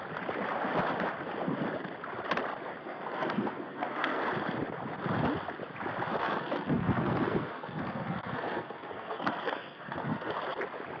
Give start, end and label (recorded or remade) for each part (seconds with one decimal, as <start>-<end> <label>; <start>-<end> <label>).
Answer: 0.0-2.8 recorded; 2.8-4.2 remade; 4.2-6.1 recorded; 6.1-10.3 remade; 10.3-11.0 recorded